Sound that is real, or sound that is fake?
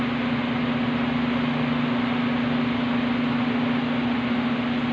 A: real